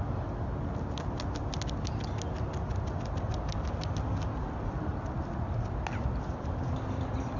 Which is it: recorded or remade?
recorded